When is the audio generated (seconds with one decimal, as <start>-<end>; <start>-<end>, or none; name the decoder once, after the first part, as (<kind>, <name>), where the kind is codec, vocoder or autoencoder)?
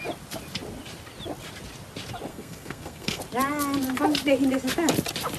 2.3-3.2 (codec, SNAC)